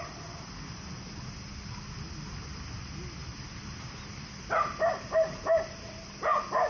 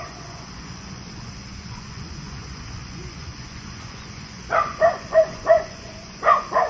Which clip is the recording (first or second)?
first